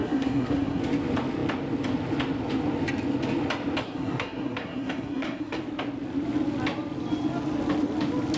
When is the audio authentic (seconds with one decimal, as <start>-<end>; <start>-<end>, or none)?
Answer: 0.8-3.8; 5.6-8.4